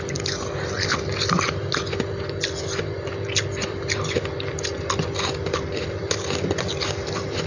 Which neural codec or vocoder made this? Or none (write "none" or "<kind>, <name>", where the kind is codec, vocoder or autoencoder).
none